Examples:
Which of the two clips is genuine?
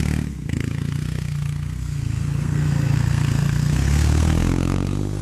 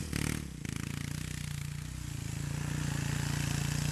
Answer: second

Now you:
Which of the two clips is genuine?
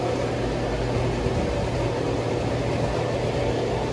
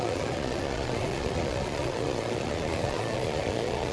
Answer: first